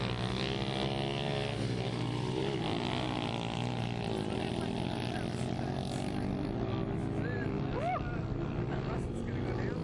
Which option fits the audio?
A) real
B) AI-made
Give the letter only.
A